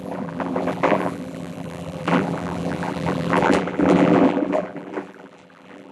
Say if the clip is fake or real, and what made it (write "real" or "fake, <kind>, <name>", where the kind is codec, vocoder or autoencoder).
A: fake, vocoder, BigVGAN v2